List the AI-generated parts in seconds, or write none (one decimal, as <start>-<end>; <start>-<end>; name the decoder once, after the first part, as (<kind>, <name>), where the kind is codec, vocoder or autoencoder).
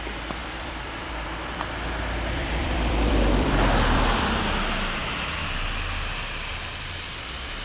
0.4-4.1 (vocoder, BigVGAN v2)